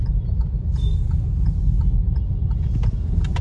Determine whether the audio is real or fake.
real